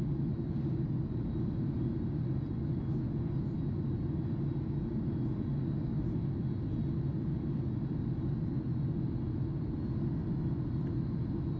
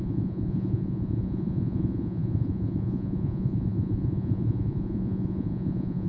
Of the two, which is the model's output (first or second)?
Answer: second